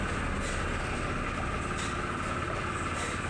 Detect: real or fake real